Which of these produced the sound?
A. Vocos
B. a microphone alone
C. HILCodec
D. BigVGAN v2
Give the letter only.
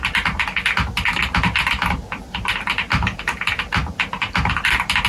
B